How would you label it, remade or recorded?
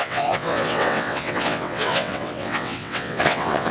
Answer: remade